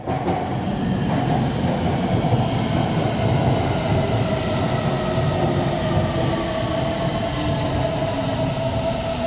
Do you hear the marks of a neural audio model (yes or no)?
no